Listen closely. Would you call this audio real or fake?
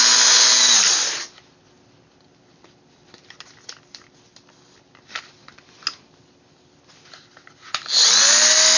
real